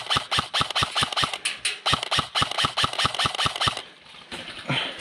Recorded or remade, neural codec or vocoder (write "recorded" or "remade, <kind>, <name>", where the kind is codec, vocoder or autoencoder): recorded